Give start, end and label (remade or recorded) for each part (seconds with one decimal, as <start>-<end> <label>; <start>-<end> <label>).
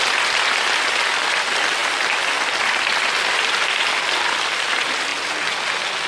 0.0-6.1 recorded